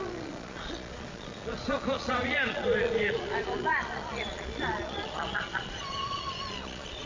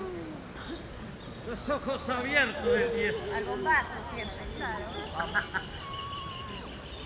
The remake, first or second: first